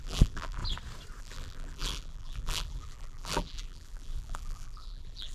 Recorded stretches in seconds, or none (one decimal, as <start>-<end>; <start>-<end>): 0.6-1.2